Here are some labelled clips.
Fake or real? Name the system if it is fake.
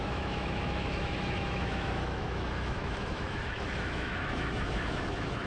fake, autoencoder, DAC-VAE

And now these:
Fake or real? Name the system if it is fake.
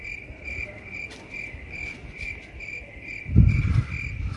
real